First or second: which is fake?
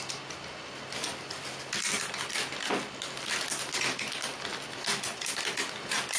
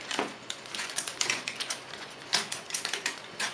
second